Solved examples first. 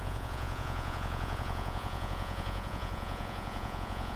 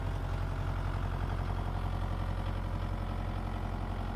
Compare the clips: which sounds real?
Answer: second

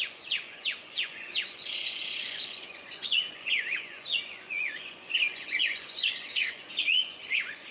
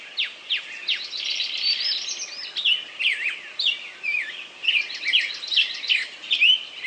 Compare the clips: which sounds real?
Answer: second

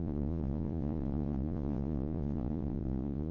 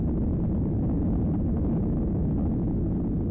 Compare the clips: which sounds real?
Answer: second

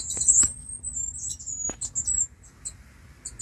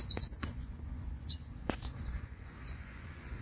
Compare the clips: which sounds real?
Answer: first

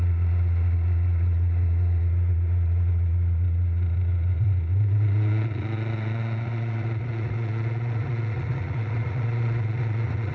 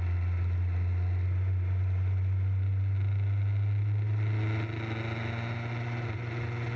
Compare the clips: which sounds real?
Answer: second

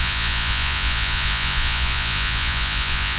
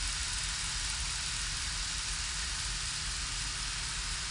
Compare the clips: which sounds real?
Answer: second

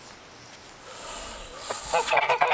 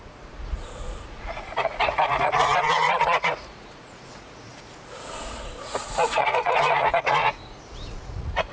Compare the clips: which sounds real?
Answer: first